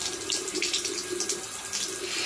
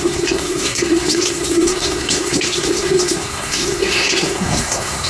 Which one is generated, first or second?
second